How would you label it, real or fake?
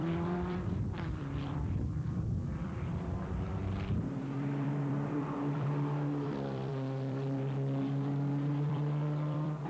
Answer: fake